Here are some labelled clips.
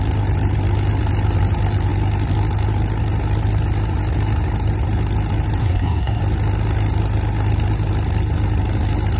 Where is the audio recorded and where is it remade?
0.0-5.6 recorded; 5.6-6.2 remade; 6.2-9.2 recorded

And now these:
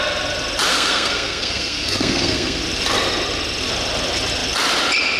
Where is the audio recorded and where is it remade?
0.0-0.7 recorded; 0.7-2.6 remade; 2.6-5.2 recorded